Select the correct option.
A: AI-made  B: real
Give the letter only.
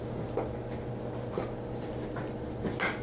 B